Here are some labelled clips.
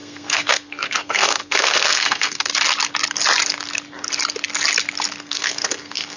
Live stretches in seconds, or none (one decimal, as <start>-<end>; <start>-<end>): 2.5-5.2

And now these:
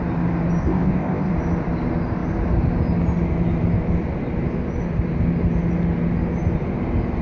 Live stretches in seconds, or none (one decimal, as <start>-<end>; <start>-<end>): 0.0-0.6; 1.3-7.2

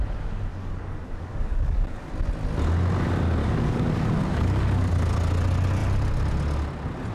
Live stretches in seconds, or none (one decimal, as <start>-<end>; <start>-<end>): 0.0-0.5; 2.1-3.4; 4.9-7.1